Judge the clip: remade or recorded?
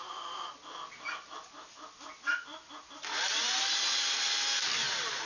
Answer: recorded